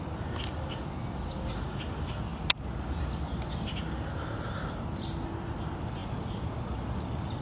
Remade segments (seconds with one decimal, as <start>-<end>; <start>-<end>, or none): none